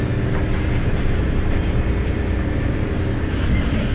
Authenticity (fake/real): real